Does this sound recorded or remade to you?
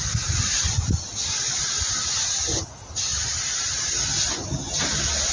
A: recorded